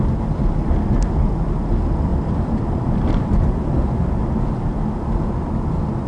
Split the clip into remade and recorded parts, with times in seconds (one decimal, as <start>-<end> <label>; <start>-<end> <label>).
0.0-2.1 recorded; 2.1-4.1 remade; 4.1-6.1 recorded